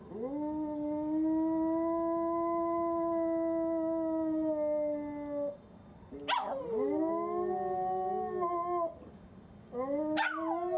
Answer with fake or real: real